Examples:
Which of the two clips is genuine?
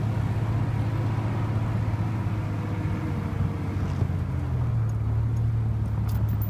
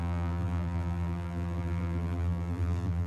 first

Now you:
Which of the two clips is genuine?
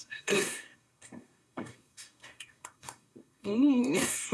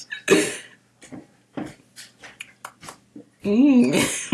second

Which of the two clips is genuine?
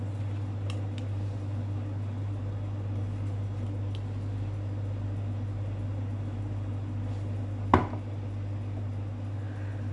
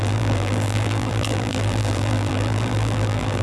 first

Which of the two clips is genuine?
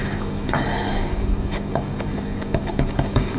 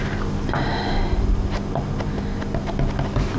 second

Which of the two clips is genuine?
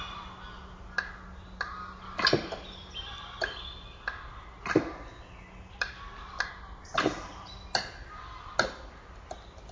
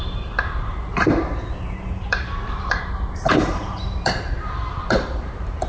first